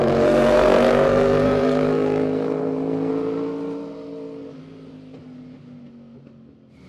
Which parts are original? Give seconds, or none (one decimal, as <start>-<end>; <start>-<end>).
3.1-6.9

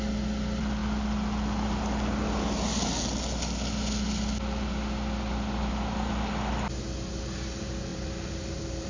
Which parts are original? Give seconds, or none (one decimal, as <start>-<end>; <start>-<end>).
0.0-7.9